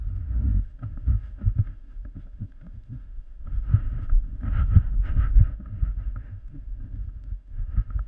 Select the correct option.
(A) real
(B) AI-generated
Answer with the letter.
B